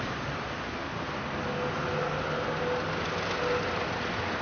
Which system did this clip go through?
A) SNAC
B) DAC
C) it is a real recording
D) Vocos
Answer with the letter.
C